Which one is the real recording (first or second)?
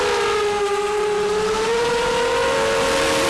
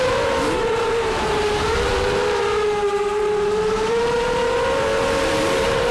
first